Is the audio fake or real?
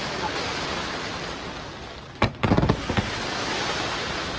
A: real